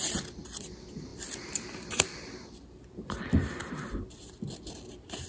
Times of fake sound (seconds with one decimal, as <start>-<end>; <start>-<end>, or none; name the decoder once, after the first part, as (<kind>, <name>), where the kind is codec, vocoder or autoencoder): 1.1-4.3 (vocoder, BigVGAN v2)